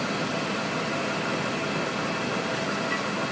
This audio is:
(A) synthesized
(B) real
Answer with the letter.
B